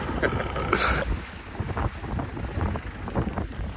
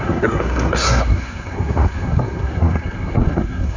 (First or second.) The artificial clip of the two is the second